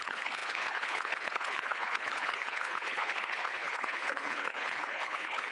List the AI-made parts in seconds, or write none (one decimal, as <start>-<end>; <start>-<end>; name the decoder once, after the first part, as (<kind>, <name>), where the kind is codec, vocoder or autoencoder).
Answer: 0.0-5.5 (codec, HILCodec)